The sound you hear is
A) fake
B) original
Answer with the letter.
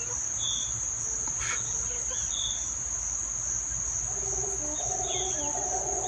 B